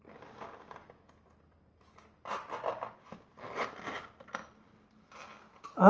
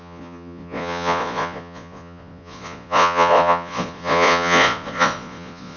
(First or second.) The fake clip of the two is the second